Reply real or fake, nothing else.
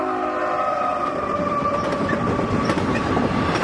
fake